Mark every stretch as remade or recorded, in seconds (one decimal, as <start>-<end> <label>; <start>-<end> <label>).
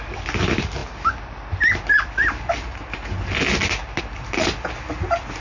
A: 0.0-5.4 recorded